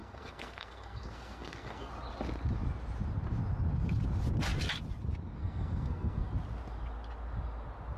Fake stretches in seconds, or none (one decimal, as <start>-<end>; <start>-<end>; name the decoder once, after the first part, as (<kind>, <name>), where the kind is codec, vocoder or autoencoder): 0.0-1.9 (codec, SNAC); 5.4-6.3